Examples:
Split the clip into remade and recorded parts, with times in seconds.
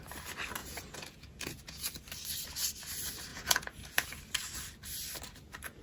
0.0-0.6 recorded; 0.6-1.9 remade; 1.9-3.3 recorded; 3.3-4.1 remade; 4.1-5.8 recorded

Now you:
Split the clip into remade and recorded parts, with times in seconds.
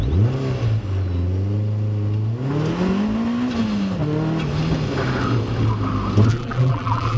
0.0-6.3 recorded; 6.3-7.2 remade